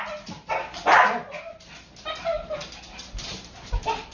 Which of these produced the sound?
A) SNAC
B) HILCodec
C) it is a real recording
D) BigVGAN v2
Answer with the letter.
D